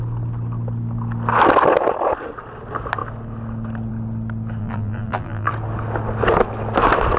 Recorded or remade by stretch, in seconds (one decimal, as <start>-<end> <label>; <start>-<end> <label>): 0.0-4.6 recorded; 4.6-5.5 remade; 5.5-7.2 recorded